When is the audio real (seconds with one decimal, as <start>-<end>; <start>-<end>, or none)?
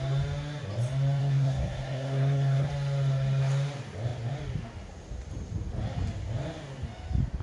0.0-1.2; 2.7-7.4